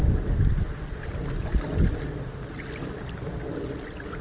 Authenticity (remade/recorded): recorded